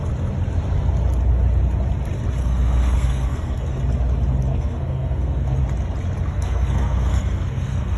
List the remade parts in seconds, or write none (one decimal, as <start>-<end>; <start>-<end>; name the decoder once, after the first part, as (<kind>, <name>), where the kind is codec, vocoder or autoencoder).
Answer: 2.4-3.8 (codec, SNAC); 4.5-5.6; 6.3-8.0